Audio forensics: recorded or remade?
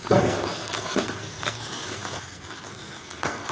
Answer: remade